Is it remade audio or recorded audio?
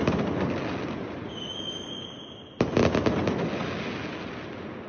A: recorded